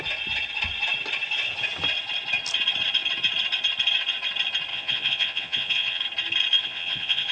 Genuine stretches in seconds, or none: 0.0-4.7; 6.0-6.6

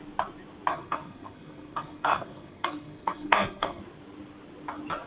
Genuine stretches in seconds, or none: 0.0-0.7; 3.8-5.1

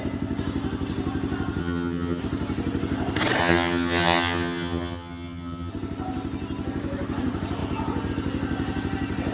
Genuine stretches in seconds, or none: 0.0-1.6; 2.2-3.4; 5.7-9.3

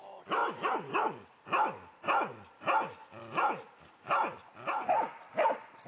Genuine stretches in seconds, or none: 0.0-0.4; 0.9-3.2; 4.5-5.9

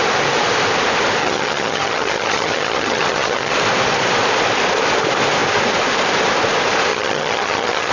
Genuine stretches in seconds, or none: 0.0-1.2; 3.5-6.9